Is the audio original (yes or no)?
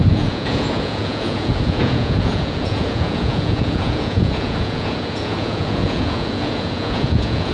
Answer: no